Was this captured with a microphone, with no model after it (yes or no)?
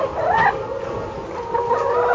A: yes